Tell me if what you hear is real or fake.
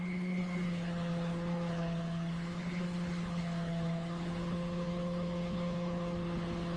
fake